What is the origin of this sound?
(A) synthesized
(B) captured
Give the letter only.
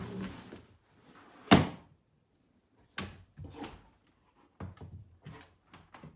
B